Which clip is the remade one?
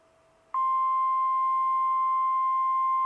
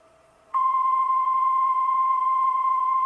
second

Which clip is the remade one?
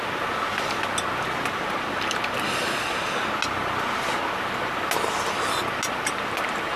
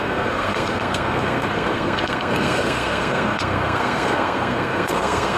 second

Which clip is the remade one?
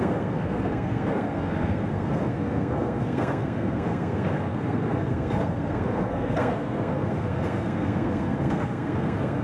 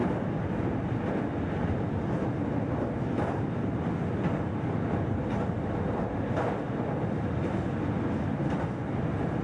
first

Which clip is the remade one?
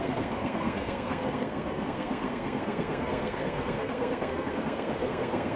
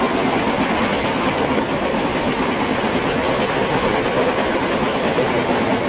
first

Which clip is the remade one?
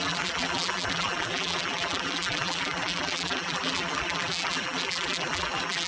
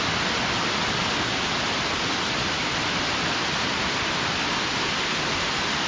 first